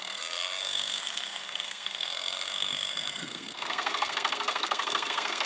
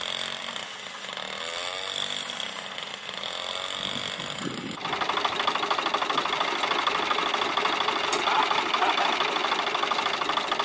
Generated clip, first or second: first